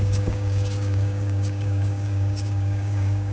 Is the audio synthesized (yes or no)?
yes